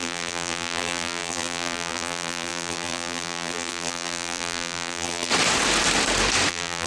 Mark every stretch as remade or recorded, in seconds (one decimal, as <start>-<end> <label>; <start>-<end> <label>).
0.0-5.3 remade; 5.3-6.5 recorded; 6.5-6.9 remade